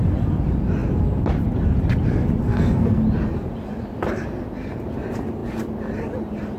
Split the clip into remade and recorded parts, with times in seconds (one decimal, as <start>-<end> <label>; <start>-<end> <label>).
0.0-2.4 recorded; 2.4-3.0 remade; 3.0-6.6 recorded